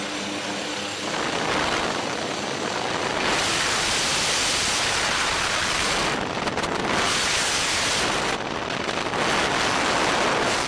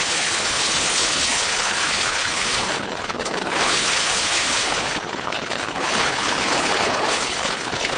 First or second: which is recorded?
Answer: first